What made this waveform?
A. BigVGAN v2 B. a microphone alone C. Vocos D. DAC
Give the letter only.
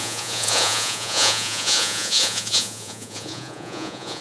C